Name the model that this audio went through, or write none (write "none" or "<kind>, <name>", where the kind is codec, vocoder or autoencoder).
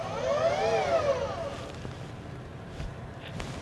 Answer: none